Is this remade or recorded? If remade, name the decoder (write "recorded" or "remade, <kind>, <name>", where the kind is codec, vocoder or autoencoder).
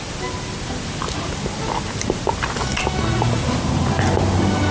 recorded